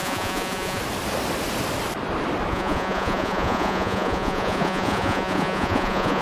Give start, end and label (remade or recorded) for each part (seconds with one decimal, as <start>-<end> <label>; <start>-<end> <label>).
0.0-0.8 remade; 0.8-2.5 recorded; 2.5-6.2 remade